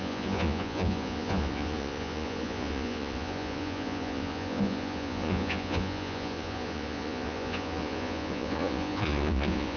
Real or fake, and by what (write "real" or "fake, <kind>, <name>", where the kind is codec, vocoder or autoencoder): fake, vocoder, Vocos